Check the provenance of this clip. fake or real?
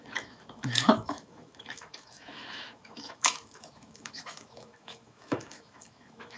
fake